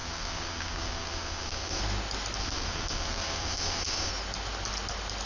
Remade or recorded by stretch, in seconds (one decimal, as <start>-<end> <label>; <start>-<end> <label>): 0.0-1.8 remade; 1.8-2.4 recorded; 2.4-4.1 remade; 4.1-5.3 recorded